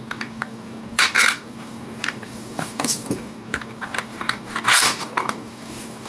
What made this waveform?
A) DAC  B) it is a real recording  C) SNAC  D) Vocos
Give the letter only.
A